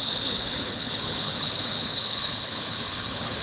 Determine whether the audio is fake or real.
fake